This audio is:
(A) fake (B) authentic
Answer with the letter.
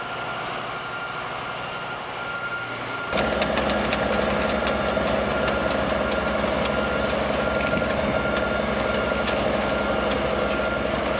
B